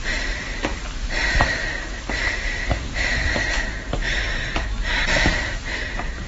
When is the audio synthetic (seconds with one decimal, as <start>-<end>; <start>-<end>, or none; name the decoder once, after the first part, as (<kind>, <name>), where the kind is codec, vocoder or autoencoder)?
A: 0.7-3.5 (vocoder, BigVGAN v2); 5.3-6.3